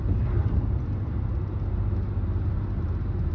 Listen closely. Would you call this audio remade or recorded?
recorded